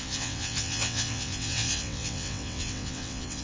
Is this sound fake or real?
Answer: fake